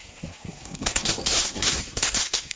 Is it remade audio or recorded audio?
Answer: remade